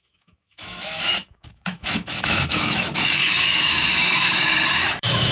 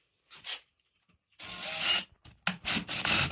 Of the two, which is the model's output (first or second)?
first